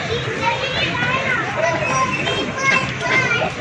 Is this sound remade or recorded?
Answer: remade